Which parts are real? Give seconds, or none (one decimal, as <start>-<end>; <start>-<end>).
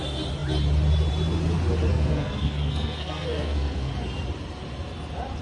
0.0-1.9; 3.9-5.4